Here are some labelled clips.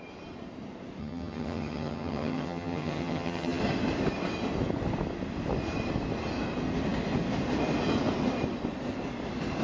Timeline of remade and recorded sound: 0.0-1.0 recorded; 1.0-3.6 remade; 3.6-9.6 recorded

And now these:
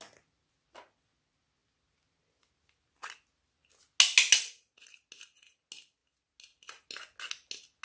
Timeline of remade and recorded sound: 0.0-7.8 recorded

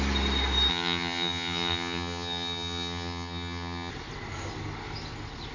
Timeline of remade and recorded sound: 0.0-0.7 recorded; 0.7-3.9 remade; 3.9-5.5 recorded

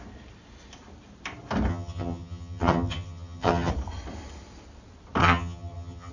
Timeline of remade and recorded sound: 0.0-1.7 recorded; 1.7-3.7 remade; 3.7-5.2 recorded; 5.2-6.1 remade

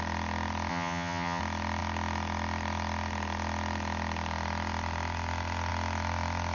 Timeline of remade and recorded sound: 0.0-0.7 recorded; 0.7-1.4 remade; 1.4-6.5 recorded

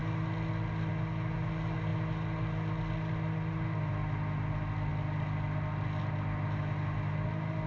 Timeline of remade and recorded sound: 0.0-7.7 recorded

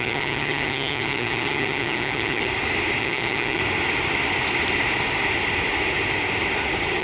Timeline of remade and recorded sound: 0.0-2.5 remade; 2.5-3.0 recorded; 3.0-3.6 remade; 3.6-7.0 recorded

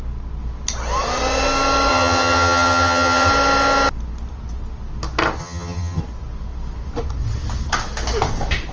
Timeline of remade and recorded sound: 0.0-1.9 recorded; 1.9-3.3 remade; 3.3-5.4 recorded; 5.4-6.0 remade; 6.0-8.7 recorded